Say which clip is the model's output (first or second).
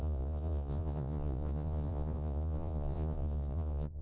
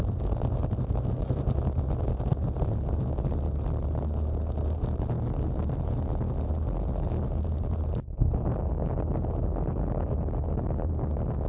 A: first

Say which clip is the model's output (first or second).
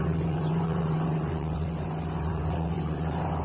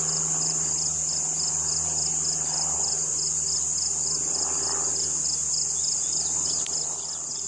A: first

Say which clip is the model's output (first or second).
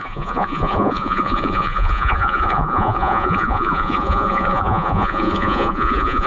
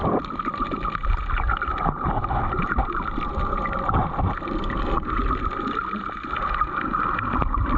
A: first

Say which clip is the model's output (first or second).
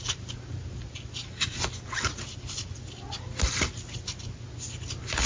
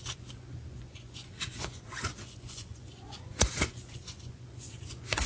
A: second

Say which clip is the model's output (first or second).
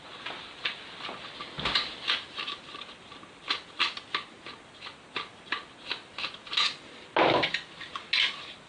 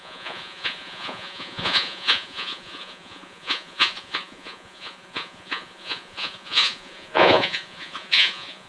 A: second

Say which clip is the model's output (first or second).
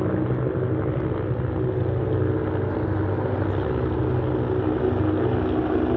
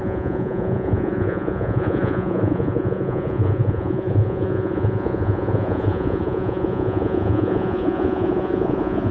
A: second